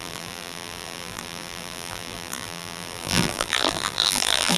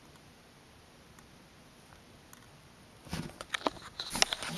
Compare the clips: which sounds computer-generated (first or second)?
first